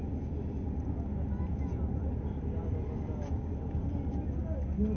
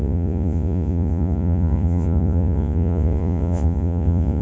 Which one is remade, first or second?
second